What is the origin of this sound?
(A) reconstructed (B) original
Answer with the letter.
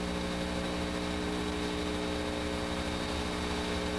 B